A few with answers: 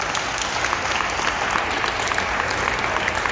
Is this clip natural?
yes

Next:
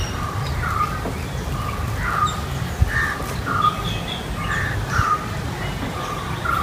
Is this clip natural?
yes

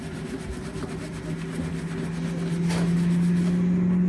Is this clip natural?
yes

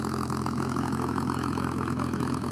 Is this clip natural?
no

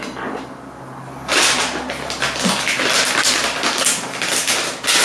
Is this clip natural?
yes